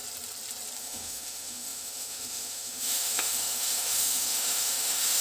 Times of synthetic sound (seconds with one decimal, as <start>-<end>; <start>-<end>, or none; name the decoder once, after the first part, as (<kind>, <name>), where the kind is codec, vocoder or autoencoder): 0.8-5.2 (autoencoder, DAC-VAE)